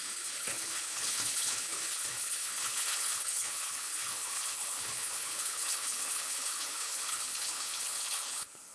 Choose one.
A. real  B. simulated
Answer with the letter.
B